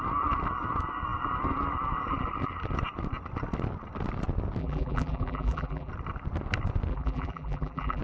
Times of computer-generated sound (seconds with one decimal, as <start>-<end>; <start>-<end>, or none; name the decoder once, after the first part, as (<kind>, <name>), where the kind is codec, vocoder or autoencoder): 4.6-5.9 (vocoder, BigVGAN v2); 6.9-8.0